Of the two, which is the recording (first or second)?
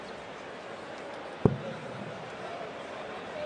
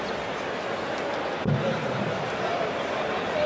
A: second